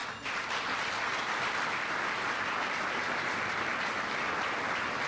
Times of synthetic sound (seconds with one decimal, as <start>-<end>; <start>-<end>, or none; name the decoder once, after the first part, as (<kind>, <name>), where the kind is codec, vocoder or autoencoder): none